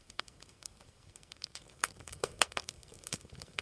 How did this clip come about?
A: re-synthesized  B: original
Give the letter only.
A